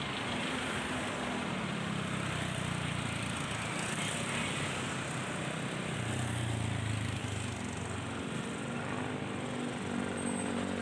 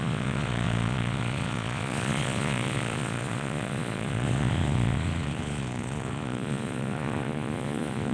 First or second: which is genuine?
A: first